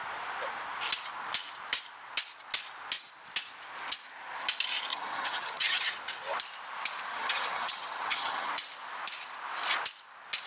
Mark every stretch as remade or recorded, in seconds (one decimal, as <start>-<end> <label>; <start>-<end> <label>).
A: 0.0-4.9 recorded; 4.9-5.9 remade; 5.9-7.1 recorded; 7.1-8.5 remade; 8.5-10.5 recorded